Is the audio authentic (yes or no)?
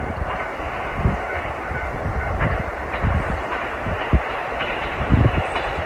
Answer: no